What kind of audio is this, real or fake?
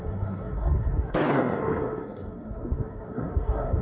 fake